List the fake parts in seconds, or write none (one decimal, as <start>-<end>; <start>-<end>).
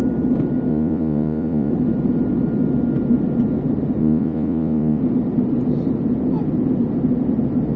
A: 0.7-1.7; 4.0-5.0